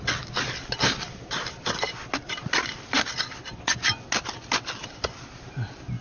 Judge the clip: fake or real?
real